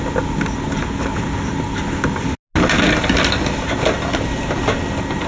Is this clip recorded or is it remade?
recorded